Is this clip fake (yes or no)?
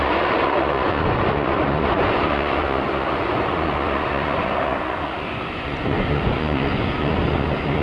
yes